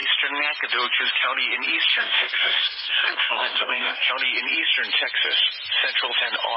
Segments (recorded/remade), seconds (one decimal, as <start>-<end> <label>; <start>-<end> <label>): 0.0-1.9 recorded; 1.9-4.1 remade; 4.1-6.6 recorded

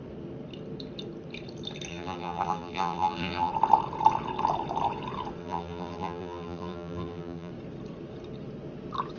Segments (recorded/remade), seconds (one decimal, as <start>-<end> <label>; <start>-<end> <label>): 0.0-1.9 recorded; 1.9-3.5 remade; 3.5-5.4 recorded; 5.4-7.5 remade; 7.5-9.2 recorded

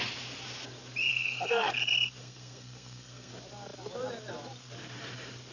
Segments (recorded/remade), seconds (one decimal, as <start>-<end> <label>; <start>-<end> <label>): 0.0-1.1 recorded; 1.1-1.7 remade; 1.7-2.2 recorded; 2.2-3.3 remade; 3.3-5.5 recorded

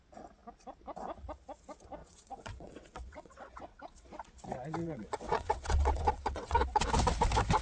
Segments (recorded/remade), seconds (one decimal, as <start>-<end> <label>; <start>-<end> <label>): 0.0-2.0 recorded; 2.0-4.3 remade; 4.3-4.8 recorded; 4.8-6.8 remade; 6.8-7.6 recorded